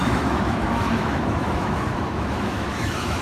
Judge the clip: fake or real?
fake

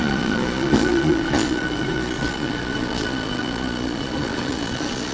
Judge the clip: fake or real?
fake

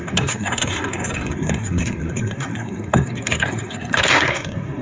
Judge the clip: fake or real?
fake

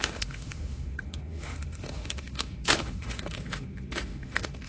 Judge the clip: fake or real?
fake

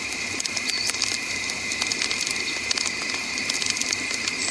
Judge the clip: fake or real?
real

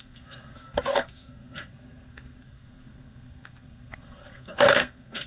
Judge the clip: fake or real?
fake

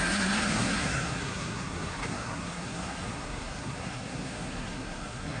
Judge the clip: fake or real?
fake